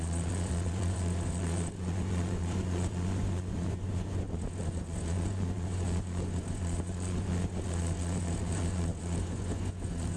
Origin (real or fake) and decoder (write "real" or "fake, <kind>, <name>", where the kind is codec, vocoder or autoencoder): fake, vocoder, Vocos